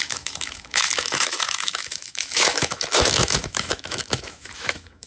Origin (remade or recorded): remade